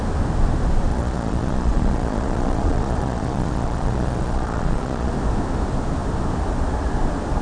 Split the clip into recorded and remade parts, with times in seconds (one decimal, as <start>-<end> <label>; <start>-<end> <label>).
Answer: 0.0-0.9 recorded; 0.9-5.1 remade; 5.1-7.4 recorded